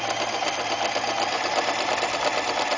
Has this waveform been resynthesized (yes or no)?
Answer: no